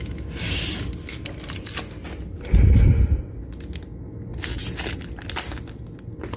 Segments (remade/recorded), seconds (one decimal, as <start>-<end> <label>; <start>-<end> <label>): 0.0-6.4 recorded